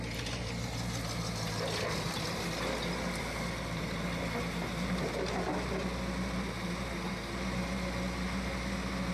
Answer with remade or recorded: recorded